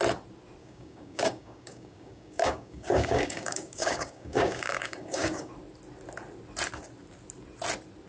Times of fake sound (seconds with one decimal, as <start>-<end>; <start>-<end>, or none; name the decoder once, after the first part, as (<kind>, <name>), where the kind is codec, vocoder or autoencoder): 0.6-5.5 (codec, DAC)